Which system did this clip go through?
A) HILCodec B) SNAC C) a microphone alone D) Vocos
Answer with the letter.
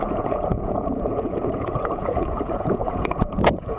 D